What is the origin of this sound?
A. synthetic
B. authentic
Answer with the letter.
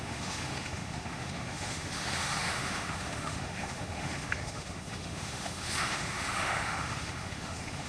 A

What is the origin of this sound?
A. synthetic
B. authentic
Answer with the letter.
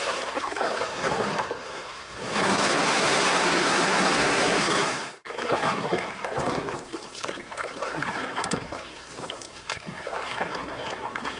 A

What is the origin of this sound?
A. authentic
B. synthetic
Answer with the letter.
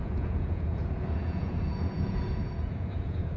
B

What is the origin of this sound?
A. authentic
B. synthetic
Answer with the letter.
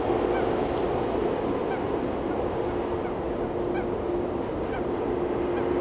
A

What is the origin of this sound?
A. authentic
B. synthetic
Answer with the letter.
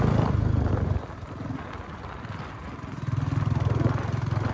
A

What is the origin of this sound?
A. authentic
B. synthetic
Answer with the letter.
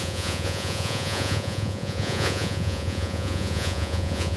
B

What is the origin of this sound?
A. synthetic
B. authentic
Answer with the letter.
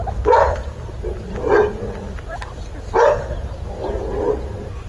B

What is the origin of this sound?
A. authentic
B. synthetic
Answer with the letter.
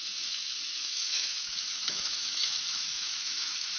B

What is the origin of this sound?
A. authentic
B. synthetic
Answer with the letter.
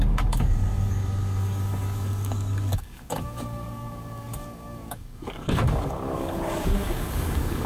B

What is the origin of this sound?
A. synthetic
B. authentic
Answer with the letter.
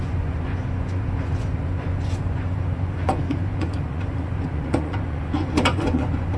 A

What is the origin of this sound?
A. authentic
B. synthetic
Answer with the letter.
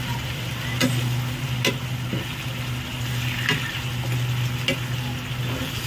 A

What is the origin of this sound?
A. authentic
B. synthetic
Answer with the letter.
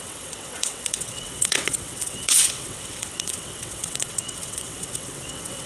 B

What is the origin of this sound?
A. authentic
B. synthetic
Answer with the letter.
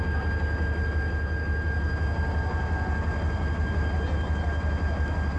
A